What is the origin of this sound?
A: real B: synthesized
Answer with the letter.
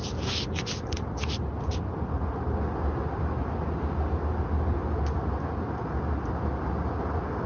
A